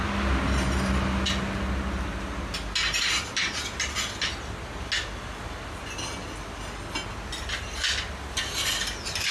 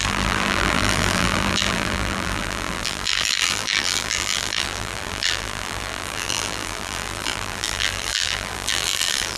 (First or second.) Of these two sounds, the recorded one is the first